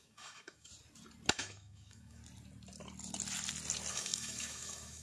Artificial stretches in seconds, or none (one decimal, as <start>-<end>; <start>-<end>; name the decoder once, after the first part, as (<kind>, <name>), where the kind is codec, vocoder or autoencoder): 0.0-0.7 (autoencoder, DAC-VAE); 1.3-2.2; 3.9-5.0